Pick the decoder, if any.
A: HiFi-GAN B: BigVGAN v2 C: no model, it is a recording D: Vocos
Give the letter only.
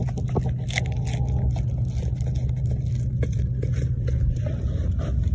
C